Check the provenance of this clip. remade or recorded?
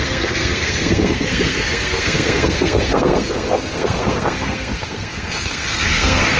remade